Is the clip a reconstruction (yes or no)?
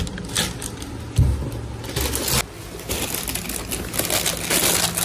no